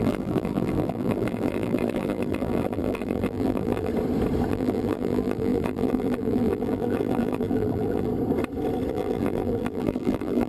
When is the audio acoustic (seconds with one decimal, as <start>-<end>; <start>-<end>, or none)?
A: 3.9-4.5; 8.1-8.9